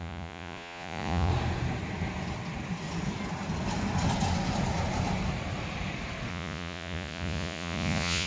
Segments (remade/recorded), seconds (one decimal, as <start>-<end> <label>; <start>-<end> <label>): 0.0-1.3 remade; 1.3-6.3 recorded; 6.3-8.3 remade